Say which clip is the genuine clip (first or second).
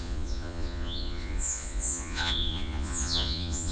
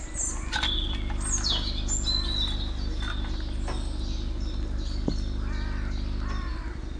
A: second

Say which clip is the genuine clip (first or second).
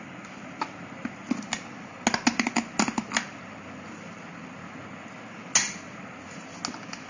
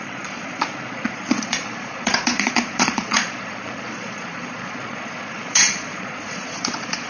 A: first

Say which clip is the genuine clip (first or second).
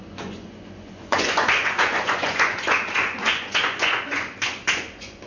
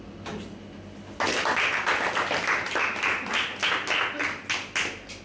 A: second